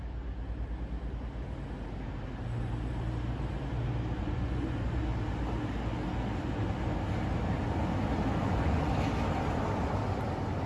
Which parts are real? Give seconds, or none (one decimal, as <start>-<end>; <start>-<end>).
0.0-4.2; 5.0-8.4; 8.9-10.7